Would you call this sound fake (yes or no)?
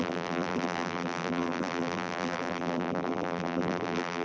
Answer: yes